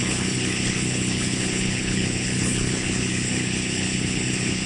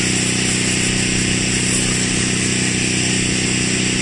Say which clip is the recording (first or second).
second